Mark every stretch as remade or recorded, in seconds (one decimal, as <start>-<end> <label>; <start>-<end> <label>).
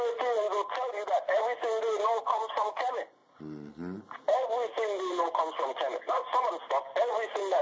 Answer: 0.0-7.6 recorded